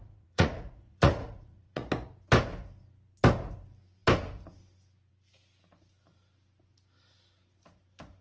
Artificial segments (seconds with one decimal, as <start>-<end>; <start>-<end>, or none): 0.0-1.9